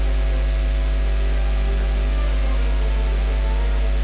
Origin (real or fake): real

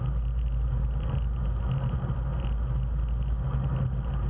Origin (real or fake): real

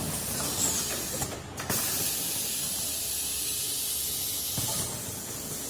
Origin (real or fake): real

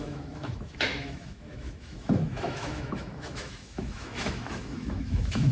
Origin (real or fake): fake